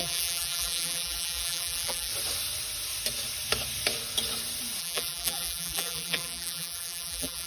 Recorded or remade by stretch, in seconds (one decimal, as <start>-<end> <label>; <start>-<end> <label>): 0.0-2.1 remade; 2.1-4.8 recorded; 4.8-7.5 remade